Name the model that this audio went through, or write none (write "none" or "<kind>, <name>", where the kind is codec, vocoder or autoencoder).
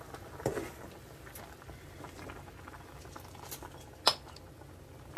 none